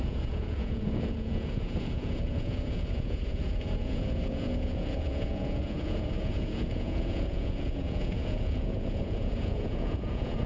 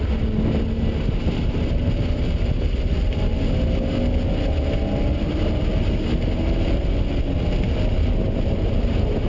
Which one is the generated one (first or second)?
first